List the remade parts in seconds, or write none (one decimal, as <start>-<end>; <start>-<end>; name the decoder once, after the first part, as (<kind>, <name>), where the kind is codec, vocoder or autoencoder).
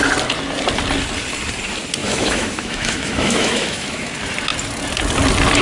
2.0-4.1 (autoencoder, DAC-VAE)